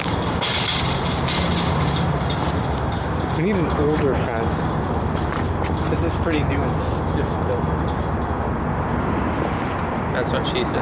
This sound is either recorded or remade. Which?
recorded